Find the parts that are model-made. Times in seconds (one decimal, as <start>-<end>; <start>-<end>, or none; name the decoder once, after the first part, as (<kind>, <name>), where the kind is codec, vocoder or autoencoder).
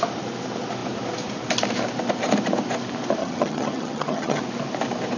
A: 3.2-4.4 (vocoder, HiFi-GAN)